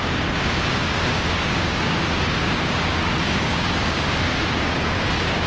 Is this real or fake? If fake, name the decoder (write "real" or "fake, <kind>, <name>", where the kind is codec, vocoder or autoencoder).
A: fake, codec, DAC